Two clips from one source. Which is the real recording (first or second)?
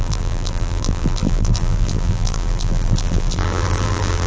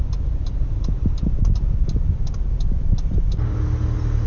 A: second